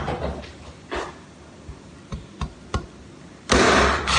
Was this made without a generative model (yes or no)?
yes